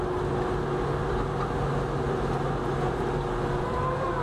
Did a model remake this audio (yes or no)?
no